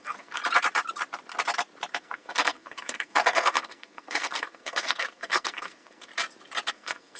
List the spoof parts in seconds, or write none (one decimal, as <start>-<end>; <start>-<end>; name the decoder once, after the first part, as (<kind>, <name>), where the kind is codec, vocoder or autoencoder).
0.0-0.4 (codec, SNAC); 2.0-6.1; 6.7-7.2